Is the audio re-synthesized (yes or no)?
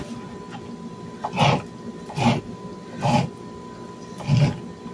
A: no